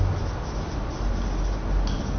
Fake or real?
real